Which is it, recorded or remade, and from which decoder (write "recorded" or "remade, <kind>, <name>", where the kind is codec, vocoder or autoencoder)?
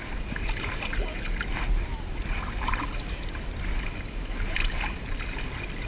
recorded